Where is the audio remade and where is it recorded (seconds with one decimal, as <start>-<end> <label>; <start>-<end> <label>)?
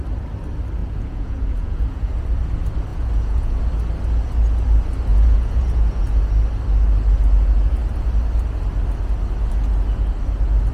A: 0.0-0.8 recorded; 0.8-2.1 remade; 2.1-2.9 recorded; 2.9-3.6 remade; 3.6-5.1 recorded; 5.1-6.2 remade; 6.2-10.7 recorded